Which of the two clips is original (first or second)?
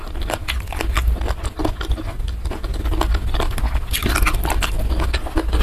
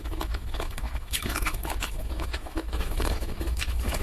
first